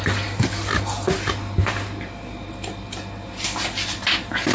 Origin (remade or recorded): recorded